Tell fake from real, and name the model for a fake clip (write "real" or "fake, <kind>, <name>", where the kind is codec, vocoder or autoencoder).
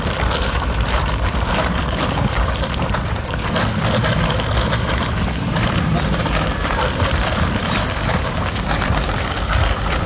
fake, vocoder, BigVGAN v2